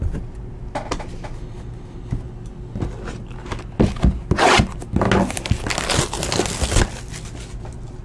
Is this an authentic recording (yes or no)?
yes